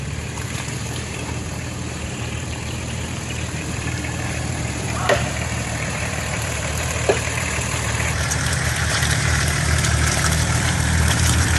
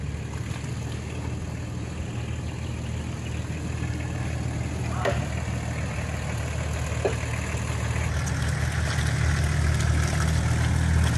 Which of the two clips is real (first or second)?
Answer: second